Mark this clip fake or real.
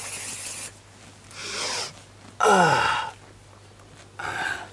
real